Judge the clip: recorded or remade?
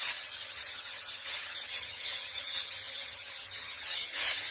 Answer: remade